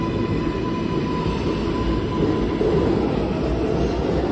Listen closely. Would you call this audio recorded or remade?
recorded